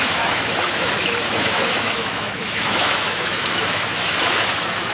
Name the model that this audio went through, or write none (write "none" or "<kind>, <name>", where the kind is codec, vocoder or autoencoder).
autoencoder, DAC-VAE